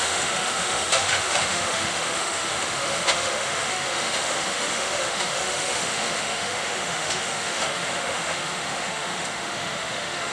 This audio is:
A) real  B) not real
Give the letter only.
B